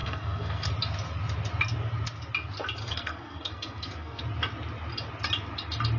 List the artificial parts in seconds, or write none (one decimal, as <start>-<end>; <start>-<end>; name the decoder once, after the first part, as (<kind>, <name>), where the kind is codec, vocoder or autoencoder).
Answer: 0.0-0.7 (codec, SNAC); 2.8-4.2